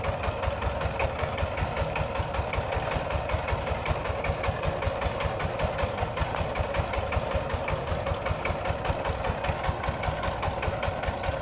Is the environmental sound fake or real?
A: real